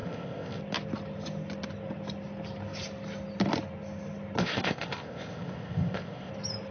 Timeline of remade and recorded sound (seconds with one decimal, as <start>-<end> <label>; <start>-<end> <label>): 0.0-0.6 remade; 0.6-4.4 recorded; 4.4-6.3 remade; 6.3-6.7 recorded